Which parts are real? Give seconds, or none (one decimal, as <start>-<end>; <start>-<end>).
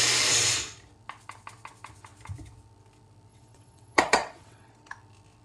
0.0-3.3; 4.7-5.4